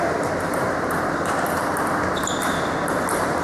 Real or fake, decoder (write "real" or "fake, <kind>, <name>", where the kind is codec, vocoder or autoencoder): fake, vocoder, BigVGAN v2